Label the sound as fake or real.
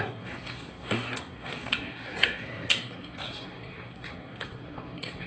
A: fake